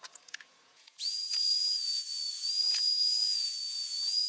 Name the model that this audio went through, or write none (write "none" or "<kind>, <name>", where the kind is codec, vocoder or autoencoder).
vocoder, Vocos